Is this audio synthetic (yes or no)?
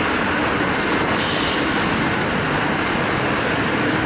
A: no